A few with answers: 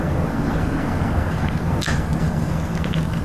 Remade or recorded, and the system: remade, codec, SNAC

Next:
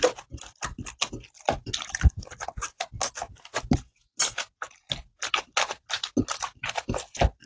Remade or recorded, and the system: recorded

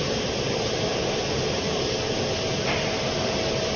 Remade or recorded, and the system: recorded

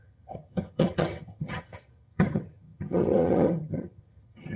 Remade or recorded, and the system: remade, vocoder, HiFi-GAN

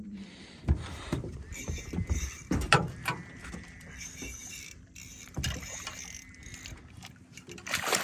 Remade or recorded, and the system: remade, vocoder, BigVGAN v2